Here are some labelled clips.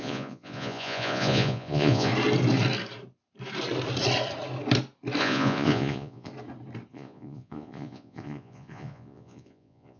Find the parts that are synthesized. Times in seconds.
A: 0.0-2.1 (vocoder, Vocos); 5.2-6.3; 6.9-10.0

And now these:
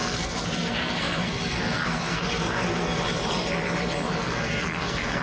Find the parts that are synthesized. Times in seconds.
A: 0.0-3.0 (codec, SNAC); 4.2-5.2

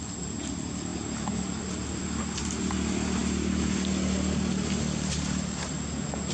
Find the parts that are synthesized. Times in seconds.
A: none

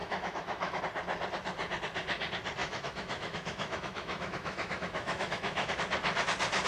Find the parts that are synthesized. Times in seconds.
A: 0.0-0.8 (autoencoder, DAC-VAE); 2.6-5.7